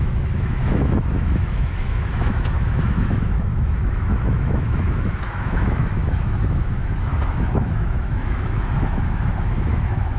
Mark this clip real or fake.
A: fake